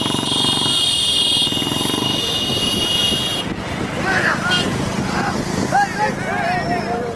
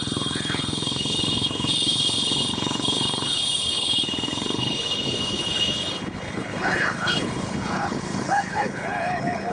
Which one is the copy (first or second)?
second